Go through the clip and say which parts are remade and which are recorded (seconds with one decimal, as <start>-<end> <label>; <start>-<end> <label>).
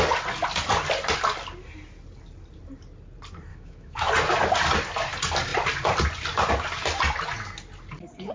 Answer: 0.0-3.5 recorded; 3.5-4.1 remade; 4.1-8.3 recorded